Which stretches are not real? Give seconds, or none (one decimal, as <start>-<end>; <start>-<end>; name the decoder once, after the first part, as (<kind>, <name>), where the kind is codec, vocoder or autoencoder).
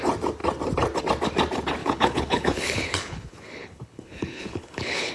1.8-5.1 (codec, HILCodec)